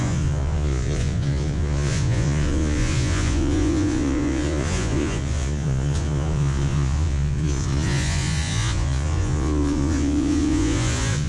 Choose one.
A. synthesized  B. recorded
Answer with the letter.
A